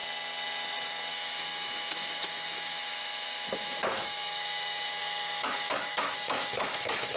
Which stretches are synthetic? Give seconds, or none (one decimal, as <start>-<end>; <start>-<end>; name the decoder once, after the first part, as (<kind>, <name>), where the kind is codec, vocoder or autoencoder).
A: 1.1-7.2 (autoencoder, DAC-VAE)